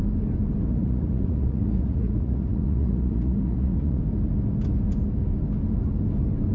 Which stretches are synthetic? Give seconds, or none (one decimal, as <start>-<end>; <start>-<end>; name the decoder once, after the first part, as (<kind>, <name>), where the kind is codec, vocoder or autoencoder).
0.7-4.0 (vocoder, Vocos)